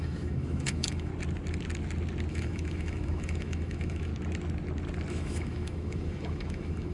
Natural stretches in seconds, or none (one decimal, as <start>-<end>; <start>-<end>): 1.1-2.3; 4.1-5.1